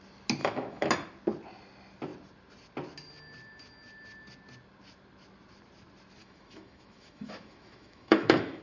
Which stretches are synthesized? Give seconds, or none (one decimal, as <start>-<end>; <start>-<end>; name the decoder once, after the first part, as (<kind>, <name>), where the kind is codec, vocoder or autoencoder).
0.4-0.9 (autoencoder, DAC-VAE); 6.2-8.6